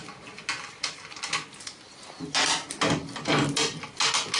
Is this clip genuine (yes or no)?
yes